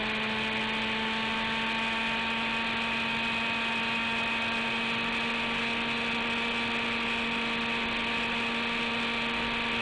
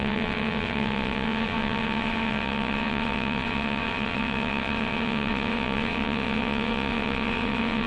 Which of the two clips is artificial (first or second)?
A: second